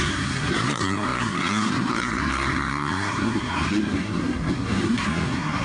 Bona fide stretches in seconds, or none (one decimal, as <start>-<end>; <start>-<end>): none